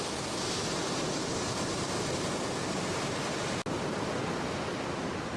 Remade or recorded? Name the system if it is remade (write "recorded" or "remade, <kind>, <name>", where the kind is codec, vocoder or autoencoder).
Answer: recorded